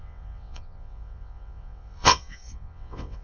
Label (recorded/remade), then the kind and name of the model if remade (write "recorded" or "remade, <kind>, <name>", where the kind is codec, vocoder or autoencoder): remade, vocoder, WaveNeXt